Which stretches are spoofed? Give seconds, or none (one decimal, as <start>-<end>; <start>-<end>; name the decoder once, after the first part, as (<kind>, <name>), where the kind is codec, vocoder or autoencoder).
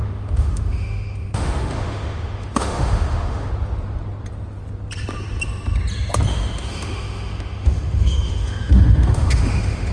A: 0.0-3.5 (autoencoder, DAC-VAE); 6.3-9.9